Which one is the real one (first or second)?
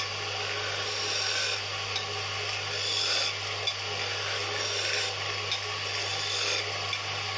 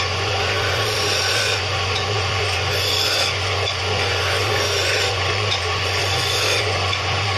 first